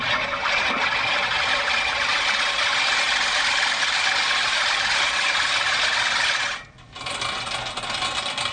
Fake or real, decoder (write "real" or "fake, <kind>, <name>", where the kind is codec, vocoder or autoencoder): real